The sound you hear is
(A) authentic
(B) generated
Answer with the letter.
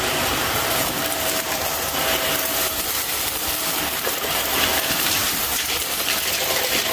B